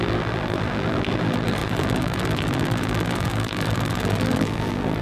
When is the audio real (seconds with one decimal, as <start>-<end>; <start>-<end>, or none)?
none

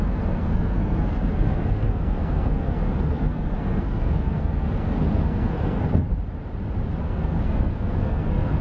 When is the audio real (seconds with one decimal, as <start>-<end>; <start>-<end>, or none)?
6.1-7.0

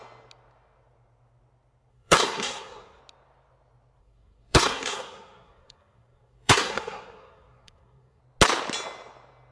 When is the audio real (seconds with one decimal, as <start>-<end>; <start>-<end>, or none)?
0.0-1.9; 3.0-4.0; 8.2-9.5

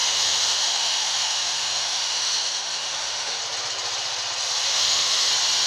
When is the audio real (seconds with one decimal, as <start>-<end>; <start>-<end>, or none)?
3.4-4.7; 5.3-5.7

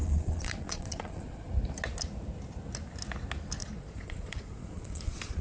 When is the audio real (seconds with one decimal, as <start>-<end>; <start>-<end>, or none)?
1.5-3.6

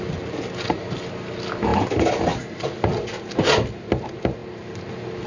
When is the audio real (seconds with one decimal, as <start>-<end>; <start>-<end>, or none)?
0.0-5.3

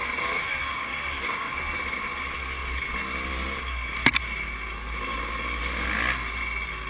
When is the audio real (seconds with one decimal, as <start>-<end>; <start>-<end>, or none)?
0.0-0.5; 1.5-6.9